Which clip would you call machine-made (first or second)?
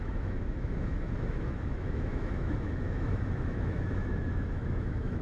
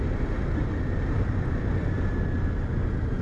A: first